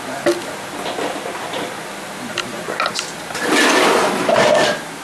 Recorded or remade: recorded